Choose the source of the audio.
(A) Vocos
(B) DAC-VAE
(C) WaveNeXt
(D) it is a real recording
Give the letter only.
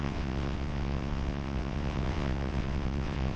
C